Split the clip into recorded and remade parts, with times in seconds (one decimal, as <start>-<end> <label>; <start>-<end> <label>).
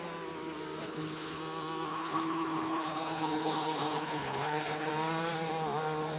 0.0-0.8 recorded; 0.8-1.4 remade; 1.4-1.9 recorded; 1.9-4.9 remade; 4.9-6.2 recorded